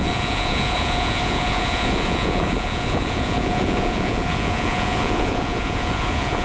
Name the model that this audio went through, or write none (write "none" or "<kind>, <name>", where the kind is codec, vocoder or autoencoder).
vocoder, Vocos